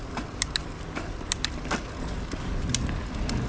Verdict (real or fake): real